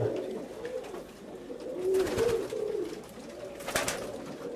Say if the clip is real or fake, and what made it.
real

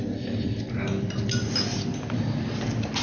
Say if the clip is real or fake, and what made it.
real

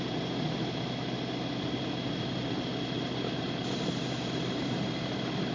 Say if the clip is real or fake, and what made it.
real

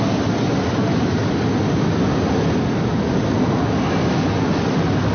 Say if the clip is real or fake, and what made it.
real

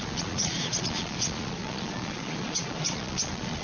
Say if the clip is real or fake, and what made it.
fake, vocoder, Vocos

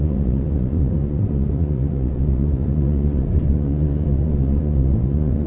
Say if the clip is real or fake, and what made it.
fake, vocoder, Vocos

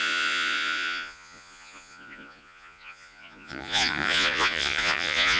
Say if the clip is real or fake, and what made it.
fake, vocoder, Vocos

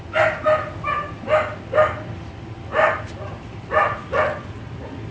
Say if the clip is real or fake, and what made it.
real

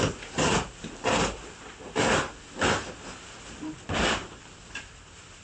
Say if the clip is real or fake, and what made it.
real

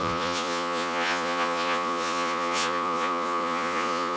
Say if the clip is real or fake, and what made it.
fake, vocoder, Vocos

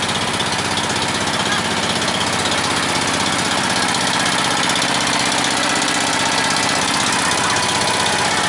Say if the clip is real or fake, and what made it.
real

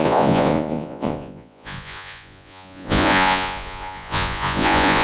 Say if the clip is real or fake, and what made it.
fake, vocoder, Vocos